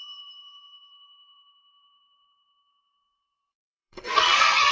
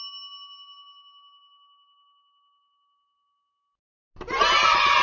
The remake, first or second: first